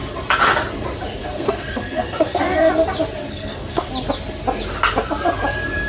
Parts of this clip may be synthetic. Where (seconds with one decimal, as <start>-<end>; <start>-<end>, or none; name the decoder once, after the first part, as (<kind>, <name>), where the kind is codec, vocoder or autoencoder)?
1.2-2.7 (codec, SNAC); 3.3-3.9